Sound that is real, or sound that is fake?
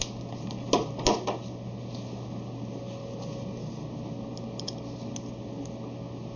real